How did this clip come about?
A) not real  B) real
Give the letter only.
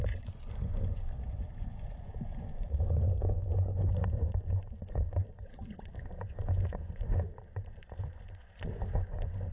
A